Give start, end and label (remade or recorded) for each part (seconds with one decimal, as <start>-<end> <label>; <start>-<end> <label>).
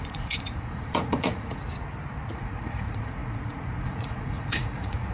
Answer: 0.0-1.6 remade; 1.6-2.3 recorded; 2.3-5.1 remade